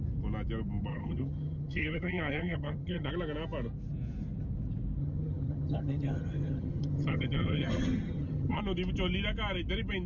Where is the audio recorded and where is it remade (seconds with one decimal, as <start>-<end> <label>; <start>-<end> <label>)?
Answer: 0.0-0.9 recorded; 0.9-3.1 remade; 3.1-5.0 recorded; 5.0-8.6 remade; 8.6-10.1 recorded